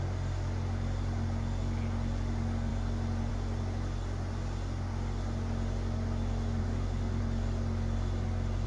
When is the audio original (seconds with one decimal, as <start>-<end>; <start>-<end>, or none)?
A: 0.0-6.6; 7.2-8.7